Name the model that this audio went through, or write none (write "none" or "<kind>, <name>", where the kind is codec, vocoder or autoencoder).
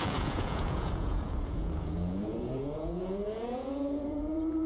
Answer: vocoder, Vocos